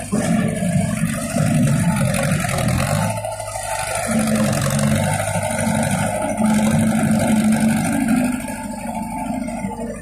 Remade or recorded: recorded